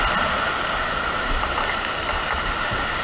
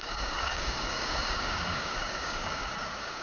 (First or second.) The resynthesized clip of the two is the second